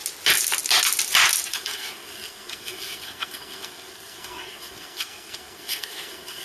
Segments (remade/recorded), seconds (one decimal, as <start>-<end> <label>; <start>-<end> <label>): 0.0-1.5 recorded; 1.5-6.4 remade